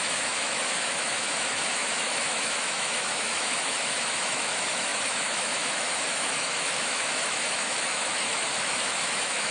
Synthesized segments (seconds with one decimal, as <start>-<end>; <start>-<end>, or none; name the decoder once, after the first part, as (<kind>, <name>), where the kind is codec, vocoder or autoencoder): 0.0-9.5 (autoencoder, DAC-VAE)